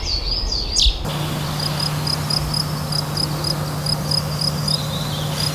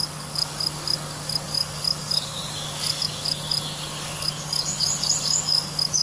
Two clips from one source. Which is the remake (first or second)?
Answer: second